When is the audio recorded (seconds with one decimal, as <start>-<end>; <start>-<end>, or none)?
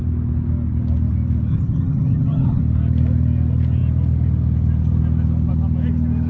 0.0-1.5; 2.6-6.3